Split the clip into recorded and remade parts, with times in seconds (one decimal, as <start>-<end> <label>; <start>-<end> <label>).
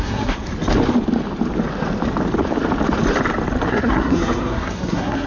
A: 0.0-0.5 remade; 0.5-3.7 recorded; 3.7-5.3 remade